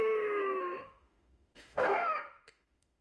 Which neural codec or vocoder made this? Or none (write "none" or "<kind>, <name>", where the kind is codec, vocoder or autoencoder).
autoencoder, DAC-VAE